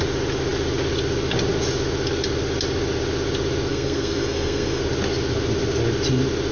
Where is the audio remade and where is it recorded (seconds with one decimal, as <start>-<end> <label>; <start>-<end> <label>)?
0.0-3.7 recorded; 3.7-4.8 remade; 4.8-6.5 recorded